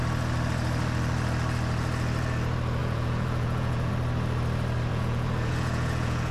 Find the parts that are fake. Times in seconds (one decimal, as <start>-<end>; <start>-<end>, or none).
2.8-3.9; 4.9-6.3